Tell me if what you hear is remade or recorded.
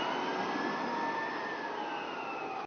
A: recorded